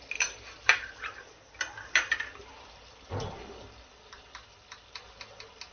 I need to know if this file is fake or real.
fake